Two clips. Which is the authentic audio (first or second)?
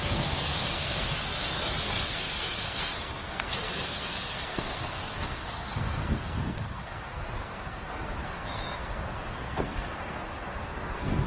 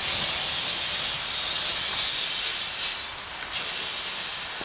second